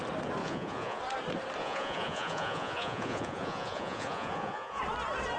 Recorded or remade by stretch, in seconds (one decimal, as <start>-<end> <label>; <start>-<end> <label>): 0.0-0.4 recorded; 0.4-1.0 remade; 1.0-1.6 recorded; 1.6-4.8 remade; 4.8-5.4 recorded